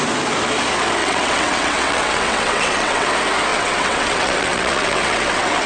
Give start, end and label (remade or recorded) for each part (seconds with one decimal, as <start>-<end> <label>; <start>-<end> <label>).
0.0-1.0 recorded; 1.0-3.1 remade; 3.1-3.5 recorded; 3.5-5.7 remade